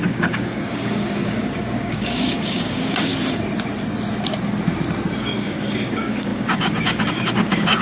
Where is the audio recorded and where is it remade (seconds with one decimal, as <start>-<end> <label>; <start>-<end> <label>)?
0.0-3.1 remade; 3.1-5.2 recorded; 5.2-7.8 remade